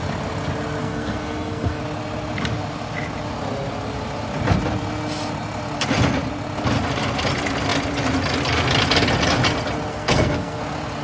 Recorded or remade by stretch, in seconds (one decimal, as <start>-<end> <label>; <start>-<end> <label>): 0.0-0.8 recorded; 0.8-1.8 remade; 1.8-9.9 recorded; 9.9-10.6 remade; 10.6-11.0 recorded